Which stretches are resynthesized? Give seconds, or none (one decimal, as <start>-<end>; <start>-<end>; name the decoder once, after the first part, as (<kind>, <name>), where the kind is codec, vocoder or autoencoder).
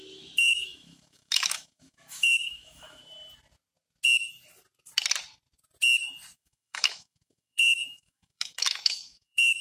0.0-3.0 (autoencoder, DAC-VAE); 6.3-9.6